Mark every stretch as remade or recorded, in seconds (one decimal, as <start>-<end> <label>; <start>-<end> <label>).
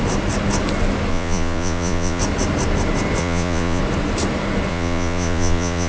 0.0-1.1 recorded; 1.1-2.2 remade; 2.2-3.2 recorded; 3.2-3.8 remade; 3.8-4.7 recorded; 4.7-5.9 remade